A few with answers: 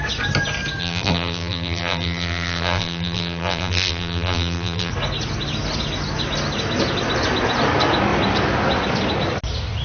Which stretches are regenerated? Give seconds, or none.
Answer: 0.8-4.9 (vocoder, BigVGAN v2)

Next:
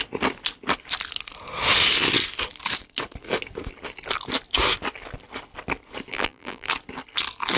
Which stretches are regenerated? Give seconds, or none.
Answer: 6.1-6.7 (vocoder, BigVGAN v2)

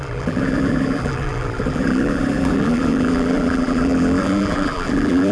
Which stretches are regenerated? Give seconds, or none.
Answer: 0.0-5.3 (vocoder, BigVGAN v2)

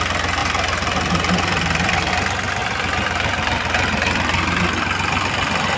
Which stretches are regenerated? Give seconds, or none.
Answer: 0.4-2.1 (vocoder, BigVGAN v2); 2.6-4.6

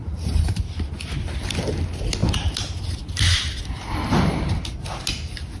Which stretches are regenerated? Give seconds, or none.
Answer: 0.0-0.6 (vocoder, BigVGAN v2)

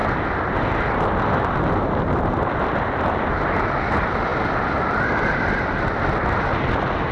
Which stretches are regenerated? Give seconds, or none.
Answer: none

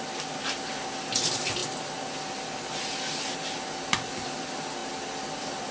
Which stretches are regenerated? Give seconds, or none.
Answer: none